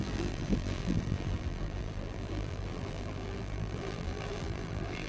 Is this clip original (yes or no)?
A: no